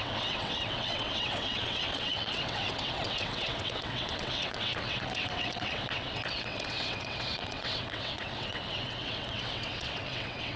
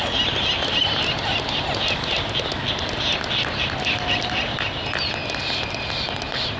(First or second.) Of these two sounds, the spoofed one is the first